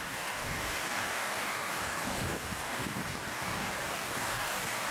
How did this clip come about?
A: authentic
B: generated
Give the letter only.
B